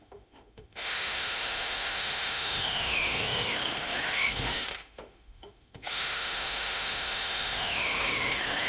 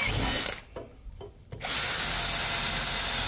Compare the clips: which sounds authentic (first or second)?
second